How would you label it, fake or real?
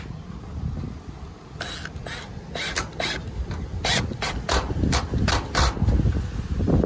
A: real